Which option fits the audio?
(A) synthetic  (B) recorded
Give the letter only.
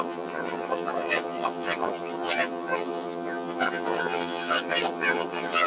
A